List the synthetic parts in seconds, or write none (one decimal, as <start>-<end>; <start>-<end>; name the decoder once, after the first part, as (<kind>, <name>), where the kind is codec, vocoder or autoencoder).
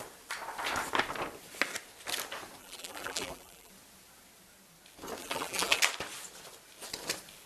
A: 2.6-3.7 (vocoder, BigVGAN v2); 5.2-5.8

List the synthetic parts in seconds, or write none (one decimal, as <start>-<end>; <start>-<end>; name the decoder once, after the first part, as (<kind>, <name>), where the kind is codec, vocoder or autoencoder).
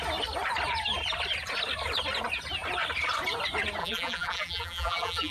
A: 3.8-5.3 (vocoder, BigVGAN v2)